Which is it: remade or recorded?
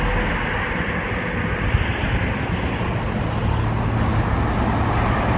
recorded